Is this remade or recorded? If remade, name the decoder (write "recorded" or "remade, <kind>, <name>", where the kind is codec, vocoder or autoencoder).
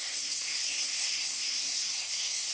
remade, codec, SNAC